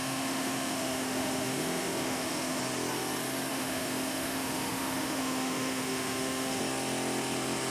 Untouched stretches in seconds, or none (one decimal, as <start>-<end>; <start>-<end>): 2.6-3.5; 6.6-7.7

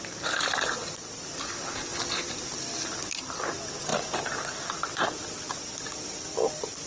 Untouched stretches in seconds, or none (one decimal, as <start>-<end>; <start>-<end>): 0.0-6.9

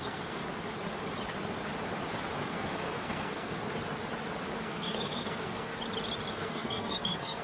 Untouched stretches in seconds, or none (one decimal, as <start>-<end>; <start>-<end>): 0.4-2.5; 3.6-4.6; 5.7-6.3

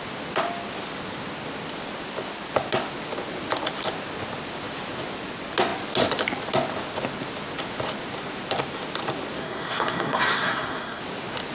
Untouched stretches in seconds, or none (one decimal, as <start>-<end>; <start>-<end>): 0.0-9.4; 11.0-11.5